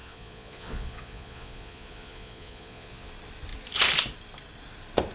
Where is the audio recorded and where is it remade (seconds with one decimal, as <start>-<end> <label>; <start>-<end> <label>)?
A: 0.0-3.1 remade; 3.1-5.1 recorded